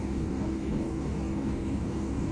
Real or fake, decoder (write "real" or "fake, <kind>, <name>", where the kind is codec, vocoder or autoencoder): fake, codec, DAC